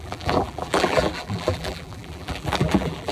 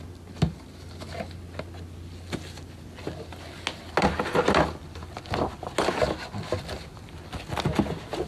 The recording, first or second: second